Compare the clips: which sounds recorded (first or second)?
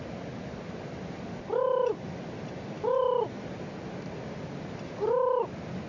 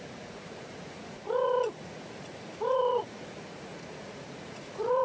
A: first